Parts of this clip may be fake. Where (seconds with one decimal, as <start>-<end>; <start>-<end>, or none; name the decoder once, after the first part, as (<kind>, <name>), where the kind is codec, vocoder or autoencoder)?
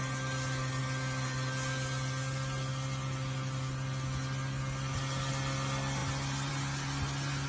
none